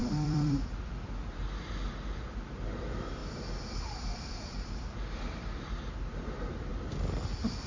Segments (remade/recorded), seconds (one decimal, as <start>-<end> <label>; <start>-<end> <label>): 0.0-0.9 remade; 0.9-3.2 recorded; 3.2-5.6 remade; 5.6-7.7 recorded